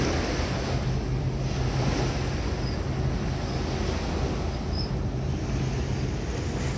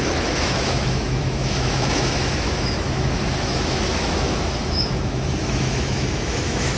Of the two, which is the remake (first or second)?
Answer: second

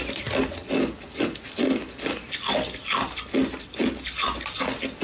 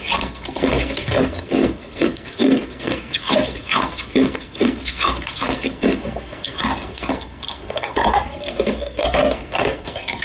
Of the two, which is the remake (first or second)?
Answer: second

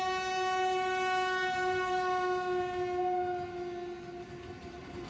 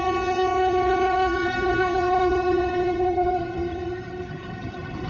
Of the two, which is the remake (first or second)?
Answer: second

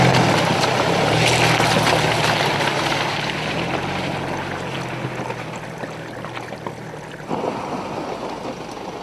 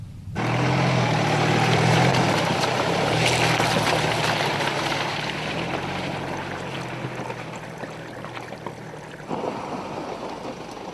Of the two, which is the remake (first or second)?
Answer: second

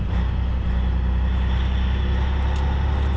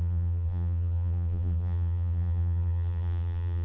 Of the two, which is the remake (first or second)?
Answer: second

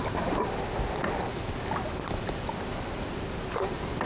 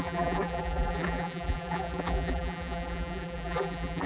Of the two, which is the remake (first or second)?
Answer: second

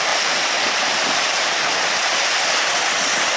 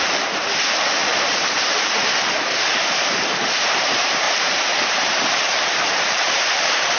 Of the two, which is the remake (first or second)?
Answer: second